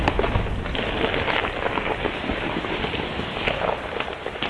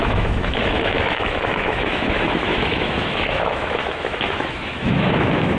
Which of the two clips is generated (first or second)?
second